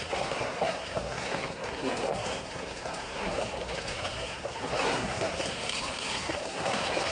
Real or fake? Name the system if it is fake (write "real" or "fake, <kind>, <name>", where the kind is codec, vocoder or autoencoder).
fake, codec, SNAC